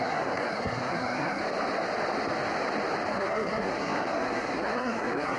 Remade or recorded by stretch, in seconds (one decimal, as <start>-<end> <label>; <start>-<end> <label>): 0.0-1.4 remade; 1.4-3.1 recorded; 3.1-5.4 remade